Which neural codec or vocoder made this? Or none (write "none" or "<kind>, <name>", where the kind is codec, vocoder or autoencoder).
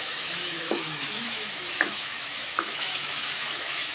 autoencoder, DAC-VAE